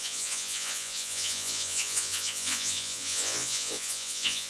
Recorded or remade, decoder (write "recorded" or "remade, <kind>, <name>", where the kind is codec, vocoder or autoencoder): remade, vocoder, Vocos